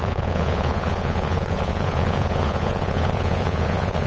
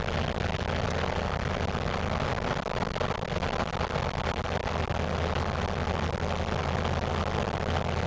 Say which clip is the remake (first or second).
first